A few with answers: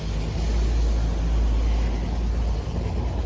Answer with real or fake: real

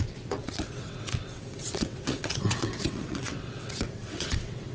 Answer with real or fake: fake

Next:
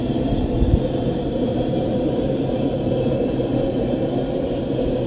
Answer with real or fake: fake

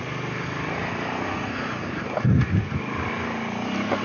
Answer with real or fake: real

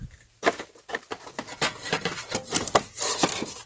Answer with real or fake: real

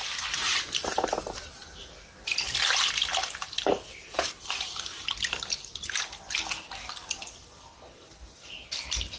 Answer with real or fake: real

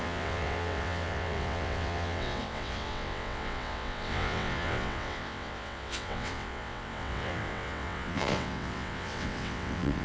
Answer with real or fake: fake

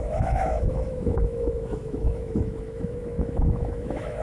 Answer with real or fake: fake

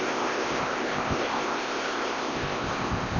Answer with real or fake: fake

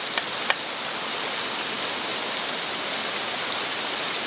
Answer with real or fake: real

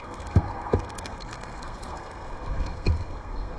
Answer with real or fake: fake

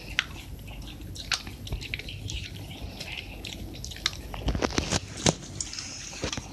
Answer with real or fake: real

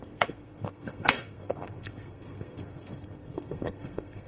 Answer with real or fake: fake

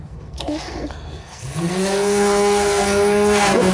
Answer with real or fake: fake